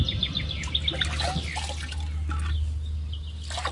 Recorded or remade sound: recorded